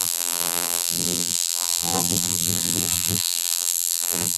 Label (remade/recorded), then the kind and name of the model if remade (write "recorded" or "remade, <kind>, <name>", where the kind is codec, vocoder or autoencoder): remade, vocoder, BigVGAN v2